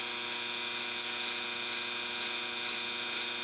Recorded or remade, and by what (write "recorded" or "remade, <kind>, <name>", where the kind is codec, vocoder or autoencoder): recorded